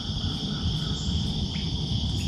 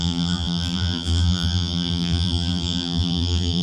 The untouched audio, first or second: first